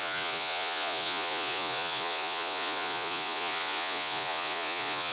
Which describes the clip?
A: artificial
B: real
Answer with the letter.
A